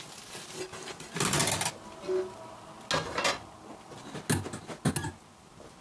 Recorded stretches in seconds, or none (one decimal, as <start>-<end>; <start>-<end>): 0.0-5.8